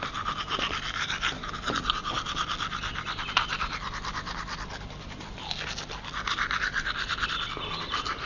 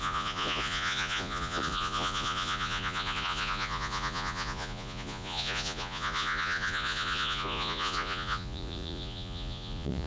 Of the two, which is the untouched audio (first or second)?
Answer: first